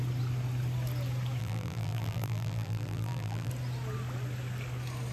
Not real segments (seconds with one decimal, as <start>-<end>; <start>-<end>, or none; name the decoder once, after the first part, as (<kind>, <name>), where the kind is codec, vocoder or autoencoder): 1.4-3.5 (vocoder, BigVGAN v2)